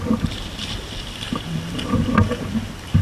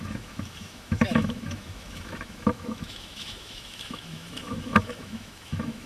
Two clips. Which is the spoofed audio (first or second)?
second